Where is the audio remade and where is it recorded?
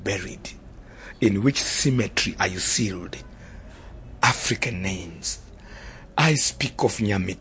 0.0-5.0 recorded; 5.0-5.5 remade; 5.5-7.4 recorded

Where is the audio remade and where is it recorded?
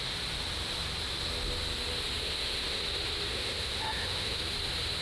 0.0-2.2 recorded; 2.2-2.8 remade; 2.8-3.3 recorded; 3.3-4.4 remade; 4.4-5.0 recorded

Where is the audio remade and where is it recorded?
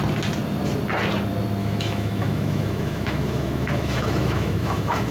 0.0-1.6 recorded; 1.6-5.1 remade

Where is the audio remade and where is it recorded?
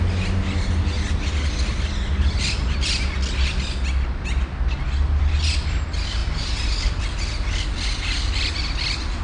0.0-9.2 recorded